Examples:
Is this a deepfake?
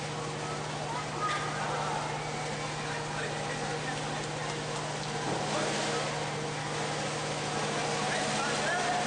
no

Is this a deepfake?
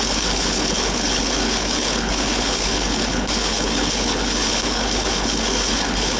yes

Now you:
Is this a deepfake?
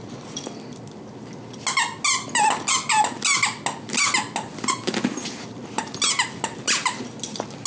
no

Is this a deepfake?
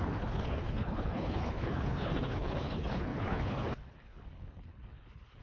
yes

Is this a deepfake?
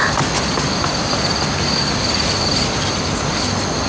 no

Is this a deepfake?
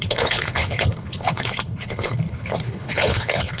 yes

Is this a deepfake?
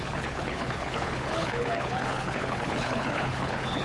yes